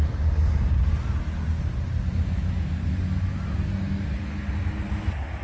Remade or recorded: recorded